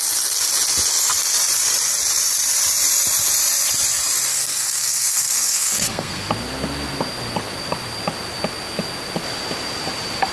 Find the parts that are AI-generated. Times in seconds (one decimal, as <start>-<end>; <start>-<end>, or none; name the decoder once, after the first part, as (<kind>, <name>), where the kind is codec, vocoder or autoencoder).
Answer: 4.3-6.3 (codec, SNAC)